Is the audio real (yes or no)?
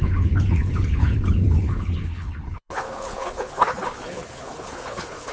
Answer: no